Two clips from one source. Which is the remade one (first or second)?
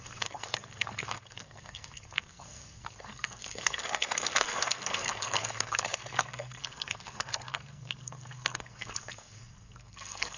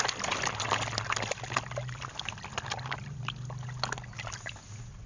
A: first